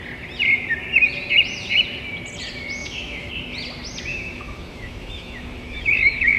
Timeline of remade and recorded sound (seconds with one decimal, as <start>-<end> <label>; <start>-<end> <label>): 0.0-2.8 recorded; 2.8-3.3 remade; 3.3-4.1 recorded; 4.1-6.4 remade